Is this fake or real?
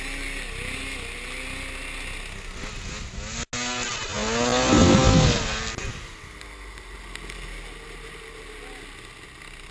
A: real